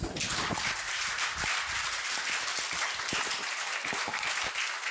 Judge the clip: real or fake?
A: real